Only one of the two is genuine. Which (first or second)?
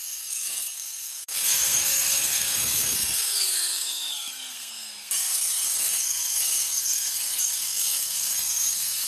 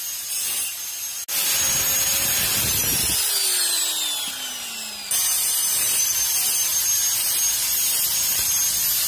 second